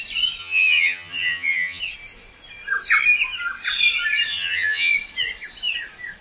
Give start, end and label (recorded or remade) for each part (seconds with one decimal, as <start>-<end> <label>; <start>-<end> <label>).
0.0-0.4 recorded; 0.4-1.8 remade; 1.8-4.3 recorded; 4.3-4.9 remade; 4.9-6.2 recorded